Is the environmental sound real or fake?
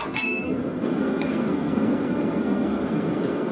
fake